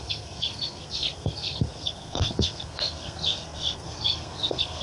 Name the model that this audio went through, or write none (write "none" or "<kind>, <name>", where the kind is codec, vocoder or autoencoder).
codec, SNAC